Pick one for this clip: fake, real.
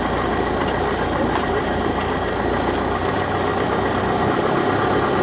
real